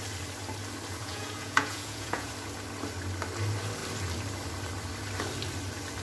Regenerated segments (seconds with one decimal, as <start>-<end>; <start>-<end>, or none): 1.0-2.3